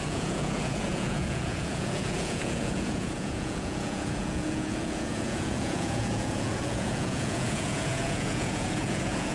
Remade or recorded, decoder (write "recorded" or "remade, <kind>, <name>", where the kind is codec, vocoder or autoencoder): remade, vocoder, Vocos